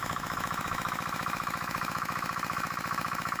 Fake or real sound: fake